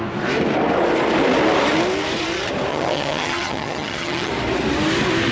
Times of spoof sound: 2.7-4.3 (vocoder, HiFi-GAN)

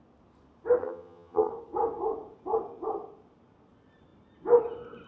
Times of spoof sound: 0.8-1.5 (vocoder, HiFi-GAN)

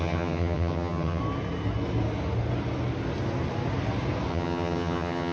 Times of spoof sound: 0.0-1.2 (vocoder, HiFi-GAN); 4.3-5.3

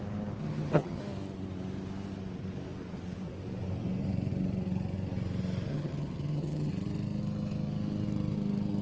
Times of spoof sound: 0.4-1.0 (vocoder, HiFi-GAN); 5.7-6.7

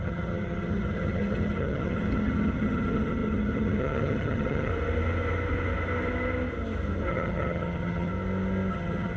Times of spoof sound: 0.0-4.7 (vocoder, HiFi-GAN); 7.1-8.1; 8.7-9.2